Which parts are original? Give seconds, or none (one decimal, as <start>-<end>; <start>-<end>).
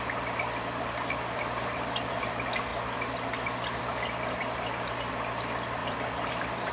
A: 0.0-5.8; 6.3-6.7